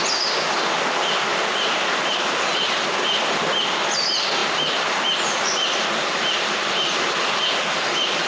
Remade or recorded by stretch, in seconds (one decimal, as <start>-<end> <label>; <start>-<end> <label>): 0.0-8.3 recorded